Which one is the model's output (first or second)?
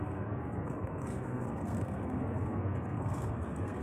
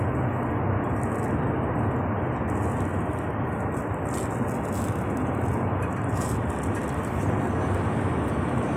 first